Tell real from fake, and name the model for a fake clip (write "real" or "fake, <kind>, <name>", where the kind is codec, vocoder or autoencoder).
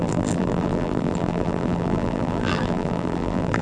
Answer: fake, vocoder, BigVGAN v2